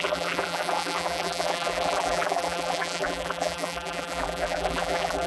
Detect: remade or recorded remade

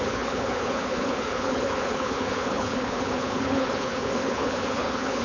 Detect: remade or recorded remade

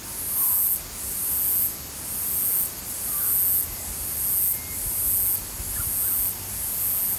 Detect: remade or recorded recorded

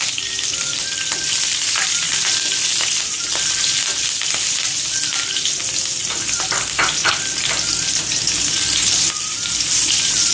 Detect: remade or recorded recorded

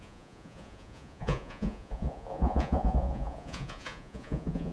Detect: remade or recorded remade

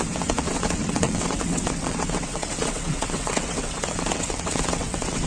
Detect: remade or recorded remade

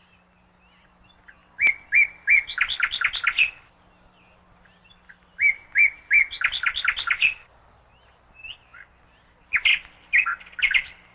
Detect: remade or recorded recorded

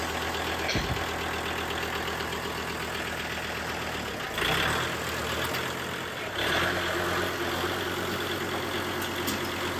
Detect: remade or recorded recorded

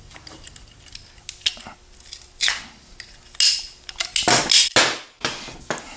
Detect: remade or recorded recorded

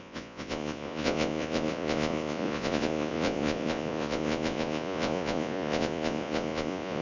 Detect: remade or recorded remade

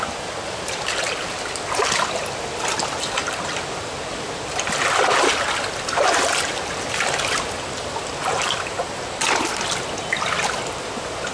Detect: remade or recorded recorded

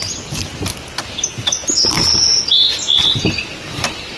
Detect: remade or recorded recorded